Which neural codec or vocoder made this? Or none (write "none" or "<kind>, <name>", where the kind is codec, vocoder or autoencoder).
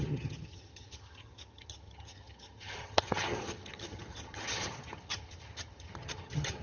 vocoder, HiFi-GAN